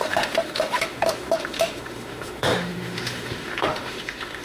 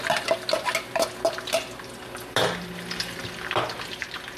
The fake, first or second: first